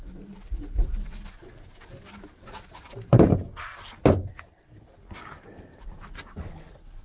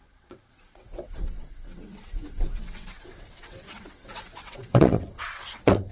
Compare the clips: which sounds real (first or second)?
first